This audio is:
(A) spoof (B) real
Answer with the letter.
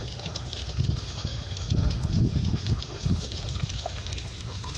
A